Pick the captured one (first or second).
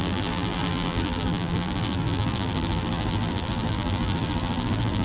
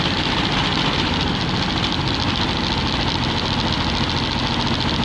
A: second